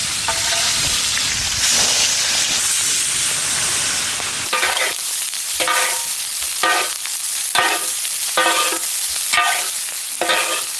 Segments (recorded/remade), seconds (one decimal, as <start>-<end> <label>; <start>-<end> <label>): 0.0-1.0 remade; 1.0-3.7 recorded; 3.7-6.1 remade; 6.1-10.8 recorded

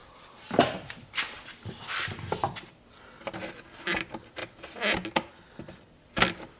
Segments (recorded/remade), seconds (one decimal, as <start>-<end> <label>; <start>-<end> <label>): 0.0-2.5 remade; 2.5-6.6 recorded

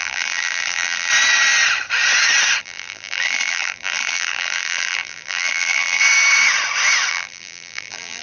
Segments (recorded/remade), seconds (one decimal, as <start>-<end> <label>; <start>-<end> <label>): 0.0-1.1 remade; 1.1-2.6 recorded; 2.6-6.0 remade; 6.0-7.1 recorded; 7.1-8.2 remade

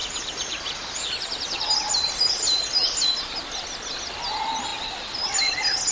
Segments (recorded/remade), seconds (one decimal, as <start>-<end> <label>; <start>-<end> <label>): 0.0-4.7 recorded; 4.7-5.3 remade; 5.3-5.9 recorded

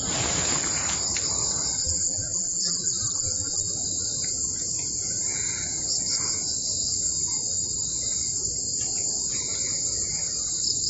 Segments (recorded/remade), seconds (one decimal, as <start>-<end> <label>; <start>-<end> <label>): 0.0-1.8 recorded; 1.8-3.7 remade; 3.7-10.9 recorded

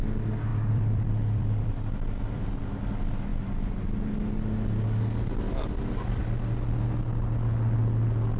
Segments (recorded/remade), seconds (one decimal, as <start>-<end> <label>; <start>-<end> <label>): 0.0-0.5 recorded; 0.5-2.5 remade; 2.5-8.4 recorded

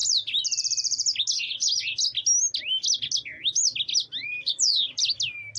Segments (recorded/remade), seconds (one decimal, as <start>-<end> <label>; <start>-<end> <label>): 0.0-4.2 recorded; 4.2-5.1 remade; 5.1-5.6 recorded